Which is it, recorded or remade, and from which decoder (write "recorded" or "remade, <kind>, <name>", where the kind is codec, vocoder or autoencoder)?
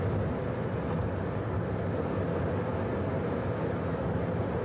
recorded